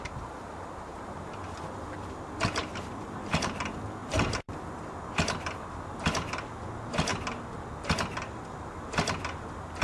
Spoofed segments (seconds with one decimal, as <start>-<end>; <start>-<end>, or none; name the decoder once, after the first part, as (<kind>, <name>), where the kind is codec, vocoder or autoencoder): 0.9-1.4 (vocoder, BigVGAN v2); 2.6-3.6; 4.0-4.6